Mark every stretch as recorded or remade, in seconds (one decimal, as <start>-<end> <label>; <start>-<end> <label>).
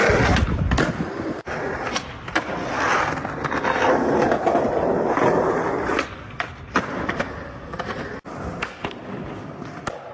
0.0-10.1 recorded